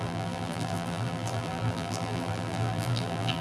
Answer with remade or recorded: remade